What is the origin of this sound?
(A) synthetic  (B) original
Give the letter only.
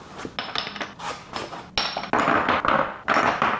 B